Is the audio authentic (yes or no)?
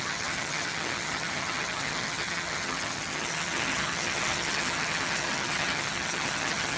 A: no